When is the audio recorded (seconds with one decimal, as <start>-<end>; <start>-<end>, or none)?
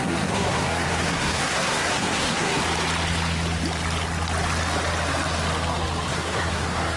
2.6-6.1